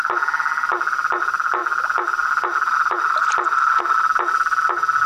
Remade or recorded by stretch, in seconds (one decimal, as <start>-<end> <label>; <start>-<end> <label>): 0.0-5.1 recorded